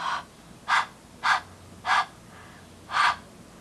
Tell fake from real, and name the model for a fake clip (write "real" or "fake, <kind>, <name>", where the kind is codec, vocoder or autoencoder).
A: real